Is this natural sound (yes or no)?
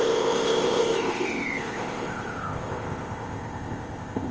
no